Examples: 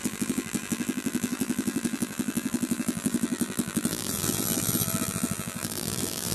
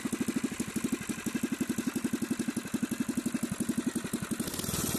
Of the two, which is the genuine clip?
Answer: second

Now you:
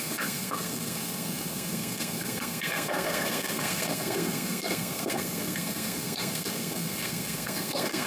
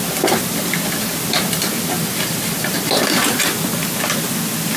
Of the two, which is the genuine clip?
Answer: second